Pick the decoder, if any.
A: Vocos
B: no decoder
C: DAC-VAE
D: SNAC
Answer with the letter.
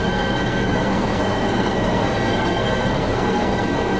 D